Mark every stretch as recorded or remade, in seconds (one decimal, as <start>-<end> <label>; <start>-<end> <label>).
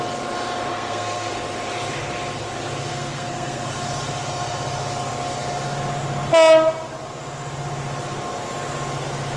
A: 0.0-0.7 recorded; 0.7-1.3 remade; 1.3-2.9 recorded; 2.9-3.7 remade; 3.7-9.4 recorded